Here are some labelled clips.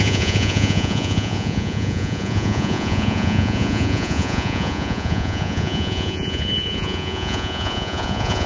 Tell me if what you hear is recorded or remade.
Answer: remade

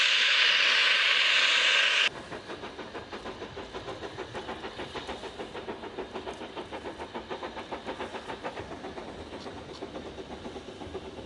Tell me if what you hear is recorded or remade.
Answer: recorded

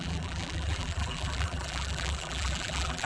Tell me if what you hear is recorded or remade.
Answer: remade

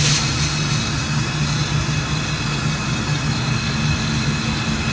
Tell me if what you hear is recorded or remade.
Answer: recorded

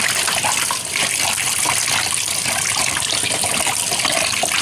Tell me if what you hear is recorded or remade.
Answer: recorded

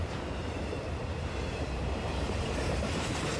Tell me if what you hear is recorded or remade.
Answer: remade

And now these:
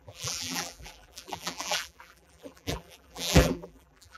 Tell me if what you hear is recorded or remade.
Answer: remade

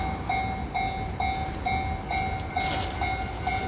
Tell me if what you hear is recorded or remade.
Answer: recorded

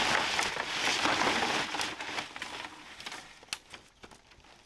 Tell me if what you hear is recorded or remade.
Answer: recorded